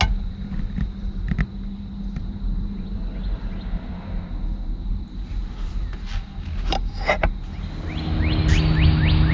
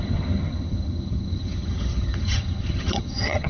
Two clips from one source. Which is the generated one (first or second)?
second